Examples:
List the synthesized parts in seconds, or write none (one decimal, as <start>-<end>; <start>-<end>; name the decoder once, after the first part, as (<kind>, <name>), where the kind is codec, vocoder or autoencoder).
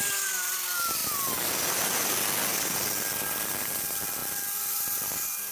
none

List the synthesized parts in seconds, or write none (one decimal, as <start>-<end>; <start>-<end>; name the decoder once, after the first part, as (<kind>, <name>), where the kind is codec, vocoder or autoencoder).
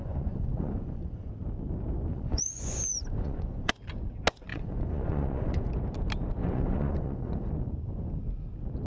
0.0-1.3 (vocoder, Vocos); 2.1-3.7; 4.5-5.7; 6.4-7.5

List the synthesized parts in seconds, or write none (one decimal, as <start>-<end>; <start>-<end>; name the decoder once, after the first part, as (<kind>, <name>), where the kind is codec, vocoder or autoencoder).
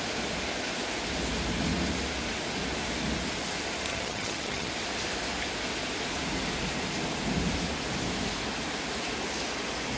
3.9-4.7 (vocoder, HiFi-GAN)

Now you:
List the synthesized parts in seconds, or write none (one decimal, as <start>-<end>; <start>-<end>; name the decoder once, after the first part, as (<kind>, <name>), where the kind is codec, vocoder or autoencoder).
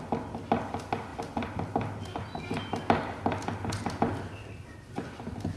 none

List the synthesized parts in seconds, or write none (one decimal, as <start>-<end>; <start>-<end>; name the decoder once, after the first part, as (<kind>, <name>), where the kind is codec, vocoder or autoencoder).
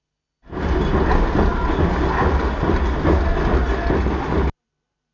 none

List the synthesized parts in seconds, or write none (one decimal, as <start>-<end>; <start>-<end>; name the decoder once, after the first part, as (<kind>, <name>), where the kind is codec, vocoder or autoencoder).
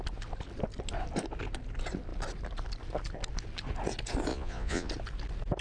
4.3-4.9 (vocoder, Vocos)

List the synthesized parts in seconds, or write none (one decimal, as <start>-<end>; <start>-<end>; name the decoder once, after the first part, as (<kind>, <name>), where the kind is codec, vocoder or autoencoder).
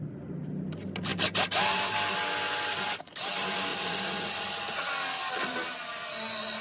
3.7-4.9 (vocoder, Vocos)